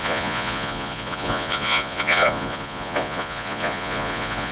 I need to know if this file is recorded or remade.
remade